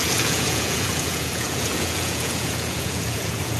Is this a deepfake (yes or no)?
yes